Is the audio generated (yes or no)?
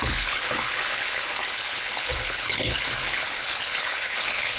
yes